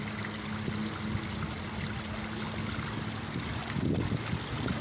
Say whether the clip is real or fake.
real